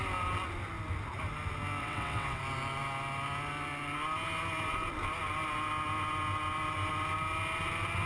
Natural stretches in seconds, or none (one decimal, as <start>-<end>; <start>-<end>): 0.0-1.8; 2.4-8.1